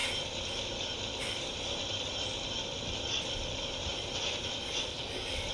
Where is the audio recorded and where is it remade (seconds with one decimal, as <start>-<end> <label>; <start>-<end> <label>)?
0.0-5.5 recorded